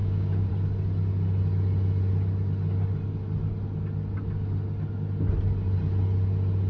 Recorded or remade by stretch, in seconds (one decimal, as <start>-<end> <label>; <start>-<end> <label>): 0.0-0.5 remade; 0.5-6.7 recorded

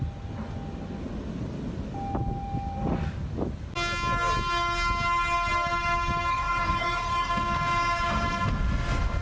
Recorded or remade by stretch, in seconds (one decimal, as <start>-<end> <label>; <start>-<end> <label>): 0.0-6.3 recorded; 6.3-7.3 remade; 7.3-9.2 recorded

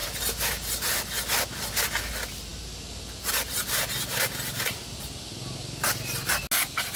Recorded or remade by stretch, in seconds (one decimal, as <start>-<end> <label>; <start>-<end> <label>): 0.0-7.0 recorded

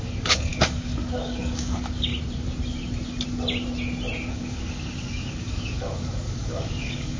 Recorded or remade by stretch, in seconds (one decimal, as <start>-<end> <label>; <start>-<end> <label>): 0.0-2.1 remade; 2.1-4.3 recorded; 4.3-7.2 remade

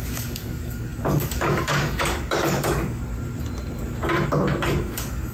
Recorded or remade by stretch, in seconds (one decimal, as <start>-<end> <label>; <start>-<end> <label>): 0.0-3.0 remade; 3.0-4.8 recorded; 4.8-5.3 remade